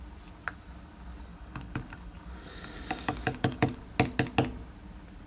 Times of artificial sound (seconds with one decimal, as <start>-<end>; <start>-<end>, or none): 1.3-3.8